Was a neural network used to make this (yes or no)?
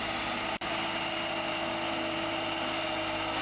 no